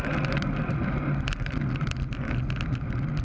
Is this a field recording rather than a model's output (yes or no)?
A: yes